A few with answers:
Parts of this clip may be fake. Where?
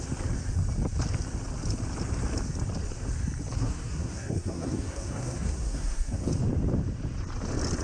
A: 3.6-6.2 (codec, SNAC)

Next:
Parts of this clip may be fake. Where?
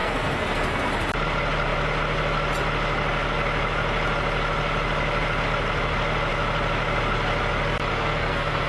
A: 0.0-0.9 (codec, SNAC); 7.9-8.7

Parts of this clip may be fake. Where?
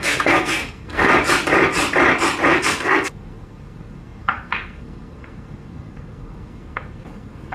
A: 0.0-1.1 (codec, SNAC); 2.5-7.5